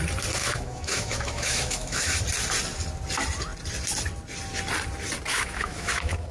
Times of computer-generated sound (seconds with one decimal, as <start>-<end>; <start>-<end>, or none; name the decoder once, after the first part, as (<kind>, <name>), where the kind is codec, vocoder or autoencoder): 0.4-2.2 (autoencoder, DAC-VAE); 5.3-6.3